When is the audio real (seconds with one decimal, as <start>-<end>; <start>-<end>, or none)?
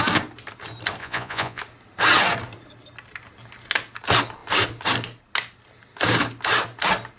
0.0-1.0; 1.6-7.2